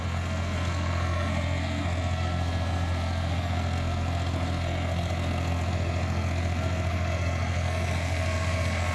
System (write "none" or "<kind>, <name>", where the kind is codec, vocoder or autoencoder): codec, SNAC